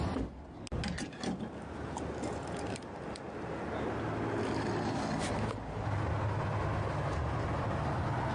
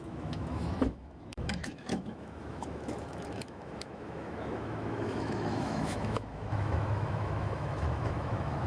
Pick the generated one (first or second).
second